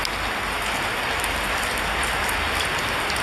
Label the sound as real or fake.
real